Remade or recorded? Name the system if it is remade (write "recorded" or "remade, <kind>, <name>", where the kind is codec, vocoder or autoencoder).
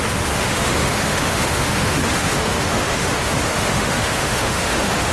remade, autoencoder, DAC-VAE